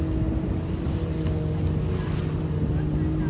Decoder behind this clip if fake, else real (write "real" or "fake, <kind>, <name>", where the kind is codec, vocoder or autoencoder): real